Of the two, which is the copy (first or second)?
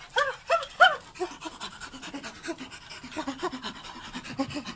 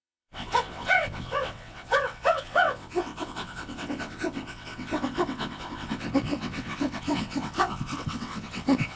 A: second